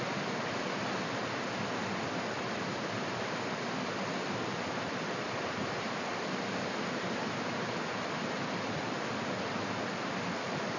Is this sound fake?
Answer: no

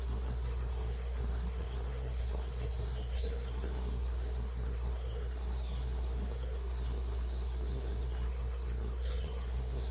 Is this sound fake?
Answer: yes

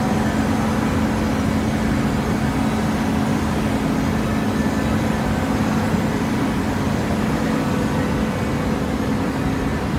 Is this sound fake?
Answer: no